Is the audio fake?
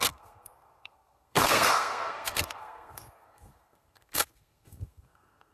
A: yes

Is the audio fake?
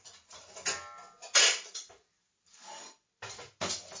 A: no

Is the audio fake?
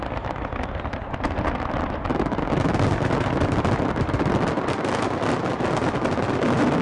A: no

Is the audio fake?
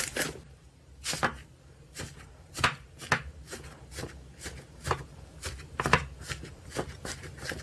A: no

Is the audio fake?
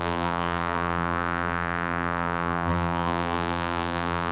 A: yes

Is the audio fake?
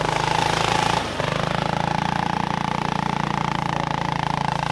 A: yes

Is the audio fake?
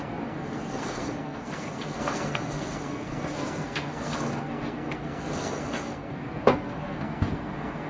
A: yes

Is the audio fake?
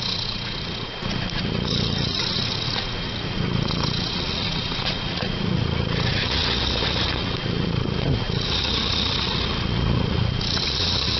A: yes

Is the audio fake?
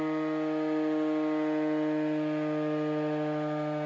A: no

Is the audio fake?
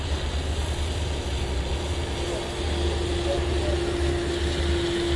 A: no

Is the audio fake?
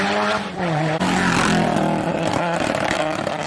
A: no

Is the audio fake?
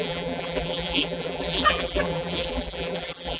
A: yes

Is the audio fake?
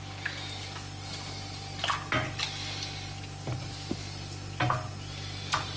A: no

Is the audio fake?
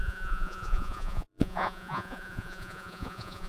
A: yes